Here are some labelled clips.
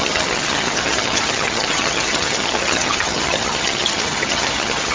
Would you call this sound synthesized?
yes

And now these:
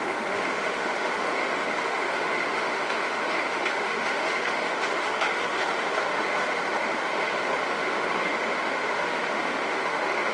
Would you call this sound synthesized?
yes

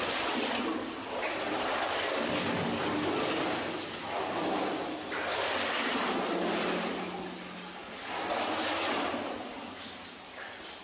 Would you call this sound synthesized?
no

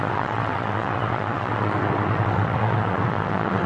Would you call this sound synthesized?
yes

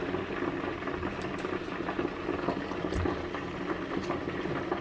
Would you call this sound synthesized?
no